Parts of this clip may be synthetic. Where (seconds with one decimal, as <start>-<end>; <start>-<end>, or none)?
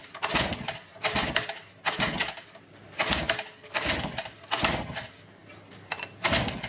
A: none